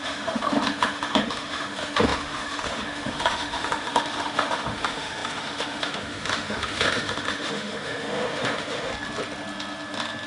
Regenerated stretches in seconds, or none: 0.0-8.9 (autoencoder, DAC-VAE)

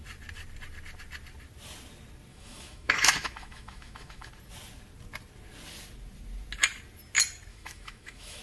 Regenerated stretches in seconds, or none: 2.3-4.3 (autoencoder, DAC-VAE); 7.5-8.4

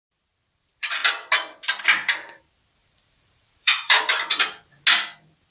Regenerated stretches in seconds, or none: 2.8-4.0 (vocoder, BigVGAN v2)